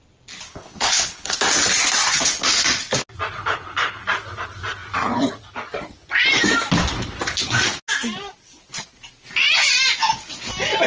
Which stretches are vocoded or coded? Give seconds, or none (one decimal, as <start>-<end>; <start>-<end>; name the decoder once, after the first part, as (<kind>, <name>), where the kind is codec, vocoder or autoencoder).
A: 0.5-1.3 (codec, HILCodec); 3.4-4.0